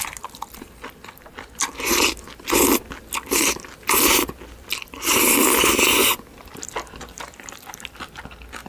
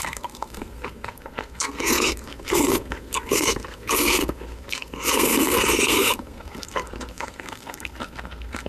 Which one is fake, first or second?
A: second